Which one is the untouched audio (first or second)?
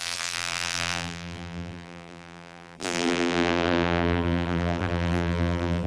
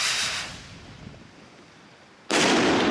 second